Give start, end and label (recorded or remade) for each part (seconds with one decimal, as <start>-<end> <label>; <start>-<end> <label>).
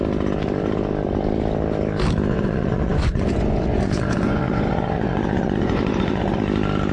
0.0-2.3 recorded; 2.3-6.4 remade; 6.4-6.9 recorded